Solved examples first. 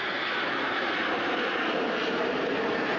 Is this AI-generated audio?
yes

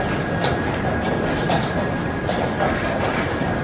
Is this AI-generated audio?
no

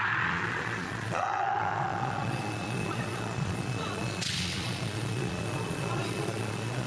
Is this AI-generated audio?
yes